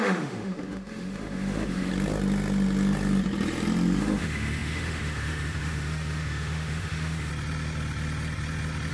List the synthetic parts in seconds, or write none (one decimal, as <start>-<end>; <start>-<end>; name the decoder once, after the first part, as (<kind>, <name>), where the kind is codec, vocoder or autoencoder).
0.0-1.9 (autoencoder, DAC-VAE); 4.0-7.3